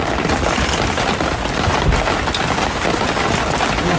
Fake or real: real